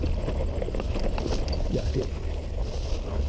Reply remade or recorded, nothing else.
recorded